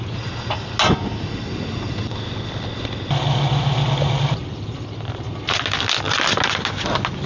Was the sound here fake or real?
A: real